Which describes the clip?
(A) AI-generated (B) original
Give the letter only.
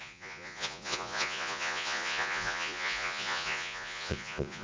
A